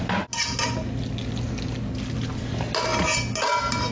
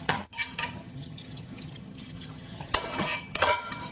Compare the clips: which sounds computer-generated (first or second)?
second